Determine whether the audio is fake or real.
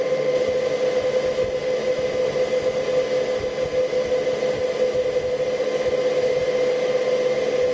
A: real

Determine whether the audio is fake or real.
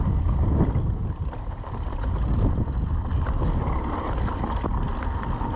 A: real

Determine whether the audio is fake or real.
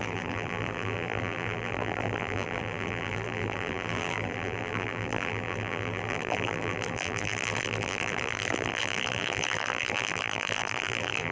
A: fake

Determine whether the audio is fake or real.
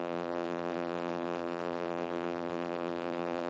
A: fake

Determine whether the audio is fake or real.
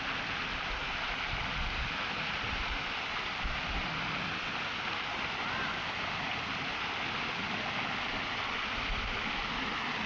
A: real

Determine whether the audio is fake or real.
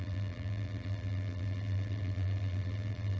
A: fake